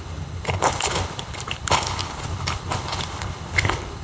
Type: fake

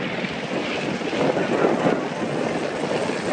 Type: real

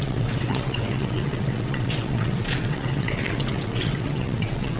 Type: fake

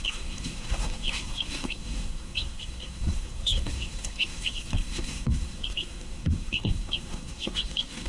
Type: fake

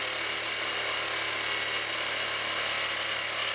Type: real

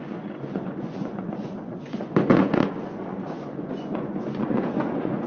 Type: fake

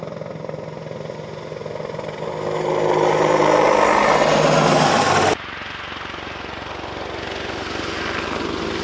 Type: real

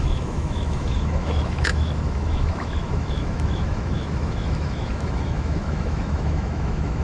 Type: fake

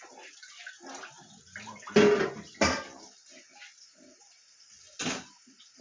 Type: real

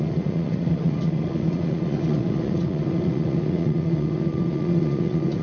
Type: fake